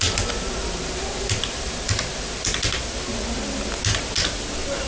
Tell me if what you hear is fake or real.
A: real